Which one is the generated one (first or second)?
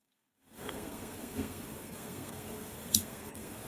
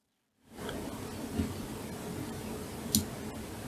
first